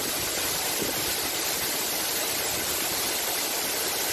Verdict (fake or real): real